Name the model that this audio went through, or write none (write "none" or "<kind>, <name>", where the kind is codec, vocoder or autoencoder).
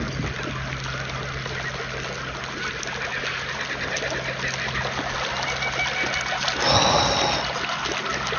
none